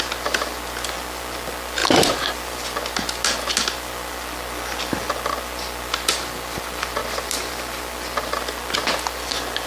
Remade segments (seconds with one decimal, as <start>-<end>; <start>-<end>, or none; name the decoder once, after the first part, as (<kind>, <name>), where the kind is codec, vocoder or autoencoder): none